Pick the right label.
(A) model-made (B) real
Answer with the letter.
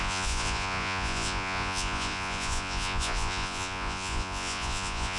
A